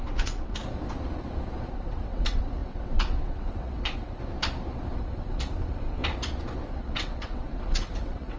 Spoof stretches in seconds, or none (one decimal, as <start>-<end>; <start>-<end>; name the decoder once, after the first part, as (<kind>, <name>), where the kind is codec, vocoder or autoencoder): 0.0-0.6 (vocoder, WaveNeXt); 1.7-4.2; 5.0-6.0; 6.7-8.4